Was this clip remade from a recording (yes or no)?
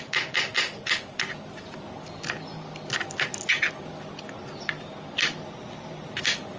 no